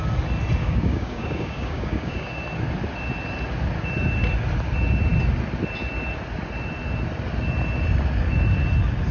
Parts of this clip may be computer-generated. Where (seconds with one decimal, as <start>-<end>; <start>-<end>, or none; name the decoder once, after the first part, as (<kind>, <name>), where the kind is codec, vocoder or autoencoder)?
0.6-2.4 (codec, DAC)